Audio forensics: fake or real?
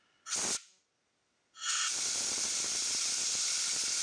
real